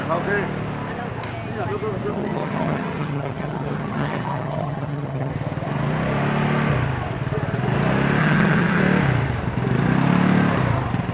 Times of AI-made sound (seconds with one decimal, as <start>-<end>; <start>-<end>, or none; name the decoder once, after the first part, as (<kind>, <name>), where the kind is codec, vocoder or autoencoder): 2.1-5.3 (vocoder, HiFi-GAN); 8.2-8.8